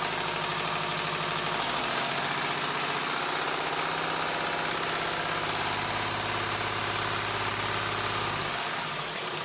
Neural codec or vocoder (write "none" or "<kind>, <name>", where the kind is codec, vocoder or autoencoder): none